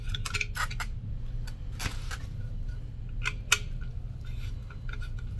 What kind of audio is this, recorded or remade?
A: recorded